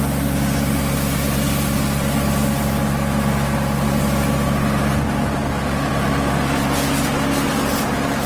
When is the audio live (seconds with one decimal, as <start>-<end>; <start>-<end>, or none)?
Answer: 0.0-8.3